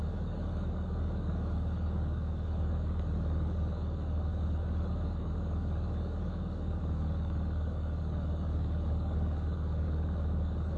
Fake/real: fake